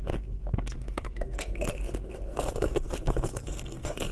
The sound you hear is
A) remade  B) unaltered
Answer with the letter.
A